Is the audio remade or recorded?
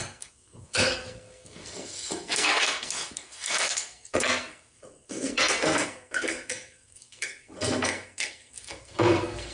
remade